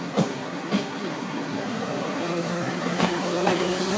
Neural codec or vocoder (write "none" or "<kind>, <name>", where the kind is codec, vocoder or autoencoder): codec, SNAC